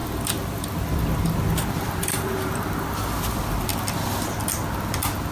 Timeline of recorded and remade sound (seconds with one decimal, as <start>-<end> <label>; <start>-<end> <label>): 0.0-3.2 remade; 3.2-5.3 recorded